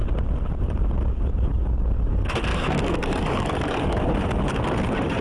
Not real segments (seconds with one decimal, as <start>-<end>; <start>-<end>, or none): 2.5-4.0